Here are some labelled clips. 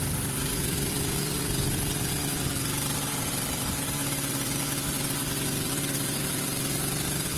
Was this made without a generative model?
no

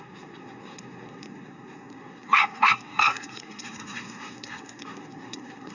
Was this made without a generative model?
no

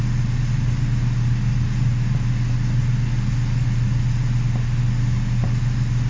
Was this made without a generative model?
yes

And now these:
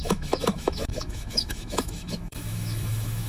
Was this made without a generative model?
no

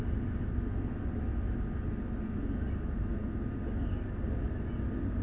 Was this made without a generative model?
yes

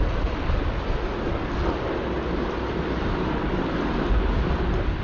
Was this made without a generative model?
yes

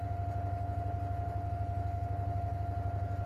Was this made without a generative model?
yes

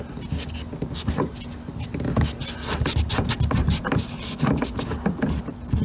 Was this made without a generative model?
yes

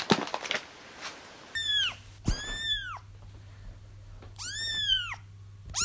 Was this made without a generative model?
yes